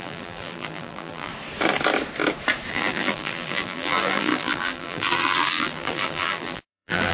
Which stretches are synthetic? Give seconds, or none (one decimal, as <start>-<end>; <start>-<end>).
0.0-1.3; 2.7-7.1

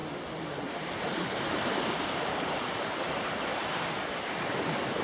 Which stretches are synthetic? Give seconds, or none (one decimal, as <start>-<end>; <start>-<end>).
0.0-5.0

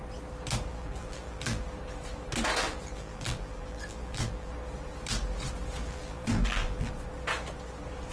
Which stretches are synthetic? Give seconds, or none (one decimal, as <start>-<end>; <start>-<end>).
0.7-1.6; 2.6-4.5; 5.8-6.9

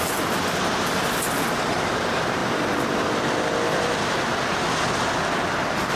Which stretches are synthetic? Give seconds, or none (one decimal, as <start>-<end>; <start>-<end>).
none